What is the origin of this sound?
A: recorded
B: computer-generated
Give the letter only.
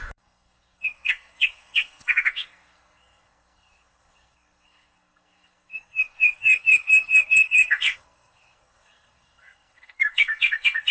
B